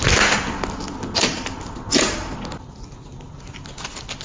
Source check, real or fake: real